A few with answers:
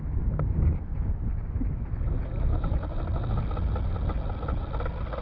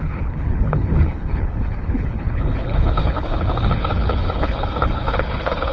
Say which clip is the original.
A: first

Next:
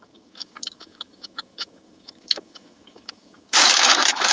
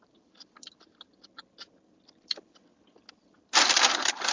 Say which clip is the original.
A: second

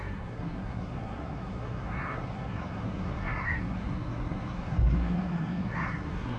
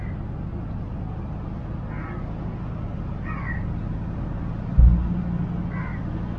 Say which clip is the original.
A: second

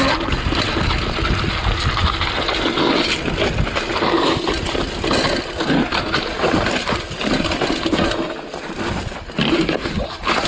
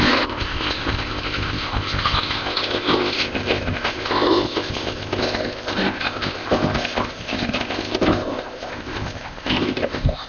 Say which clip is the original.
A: first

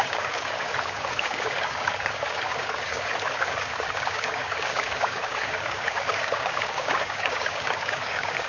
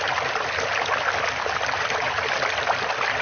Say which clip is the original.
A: second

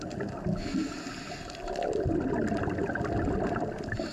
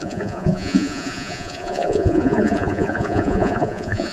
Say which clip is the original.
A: first